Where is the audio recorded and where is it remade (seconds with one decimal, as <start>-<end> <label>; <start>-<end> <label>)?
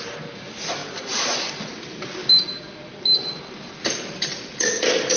0.0-0.8 recorded; 0.8-1.6 remade; 1.6-5.2 recorded